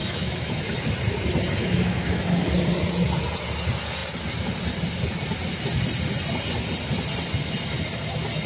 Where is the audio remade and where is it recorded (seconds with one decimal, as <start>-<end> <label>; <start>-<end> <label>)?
0.0-0.6 remade; 0.6-1.6 recorded; 1.6-2.5 remade; 2.5-8.5 recorded